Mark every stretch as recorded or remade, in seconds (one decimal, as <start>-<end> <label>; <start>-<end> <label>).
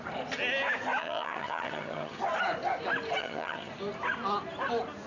0.0-1.0 recorded; 1.0-2.2 remade; 2.2-3.2 recorded; 3.2-3.7 remade; 3.7-5.1 recorded